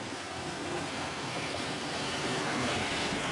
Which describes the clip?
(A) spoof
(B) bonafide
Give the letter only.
A